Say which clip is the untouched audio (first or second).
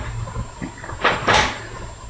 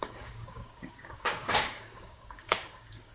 first